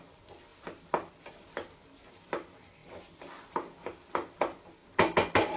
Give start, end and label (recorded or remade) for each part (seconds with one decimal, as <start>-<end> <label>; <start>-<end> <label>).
0.0-5.6 recorded